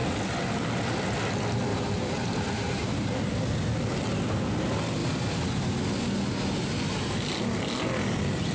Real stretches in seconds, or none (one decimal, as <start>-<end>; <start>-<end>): 0.0-1.7; 3.2-8.5